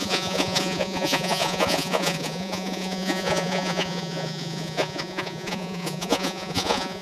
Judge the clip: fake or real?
fake